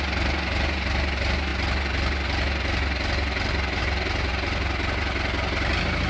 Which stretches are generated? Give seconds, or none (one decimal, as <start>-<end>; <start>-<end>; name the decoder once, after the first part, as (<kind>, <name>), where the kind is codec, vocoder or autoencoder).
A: none